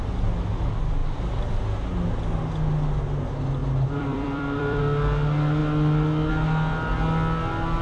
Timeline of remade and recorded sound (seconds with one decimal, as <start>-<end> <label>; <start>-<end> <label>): 0.0-1.0 recorded; 1.0-1.5 remade; 1.5-3.6 recorded; 3.6-4.8 remade; 4.8-7.8 recorded